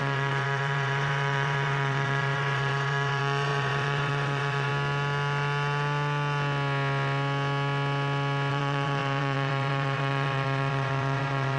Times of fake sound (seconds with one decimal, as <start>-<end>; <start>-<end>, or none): 0.0-4.7; 8.5-11.6